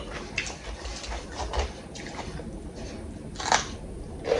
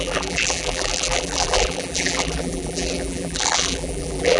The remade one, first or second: second